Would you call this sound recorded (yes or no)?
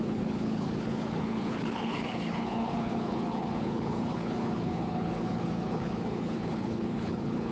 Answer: no